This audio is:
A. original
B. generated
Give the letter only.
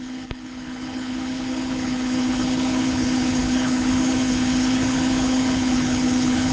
B